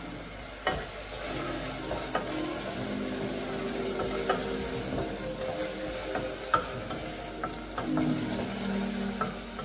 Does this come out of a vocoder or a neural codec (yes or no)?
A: no